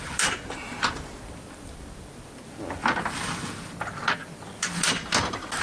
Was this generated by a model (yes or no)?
no